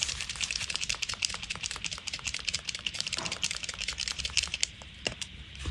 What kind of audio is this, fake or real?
fake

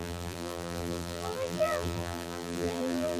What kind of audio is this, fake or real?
fake